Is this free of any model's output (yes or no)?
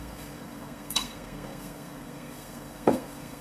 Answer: no